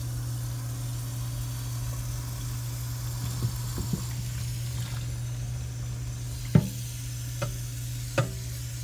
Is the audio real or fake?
real